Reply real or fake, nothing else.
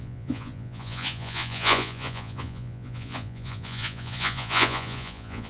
fake